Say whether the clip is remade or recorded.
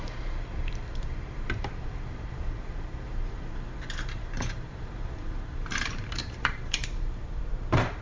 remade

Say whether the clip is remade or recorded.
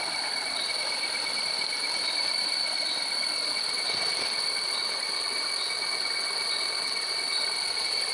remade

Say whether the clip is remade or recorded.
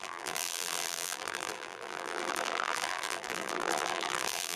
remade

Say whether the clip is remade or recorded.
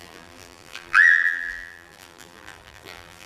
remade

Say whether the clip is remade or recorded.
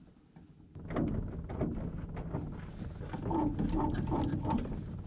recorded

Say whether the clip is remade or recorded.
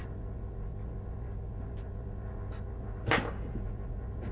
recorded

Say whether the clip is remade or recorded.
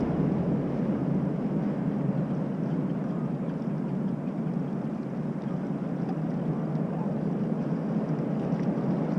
recorded